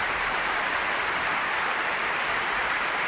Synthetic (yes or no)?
no